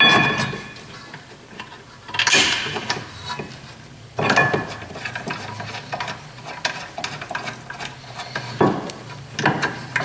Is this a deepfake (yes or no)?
no